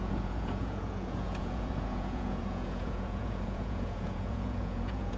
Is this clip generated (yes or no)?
yes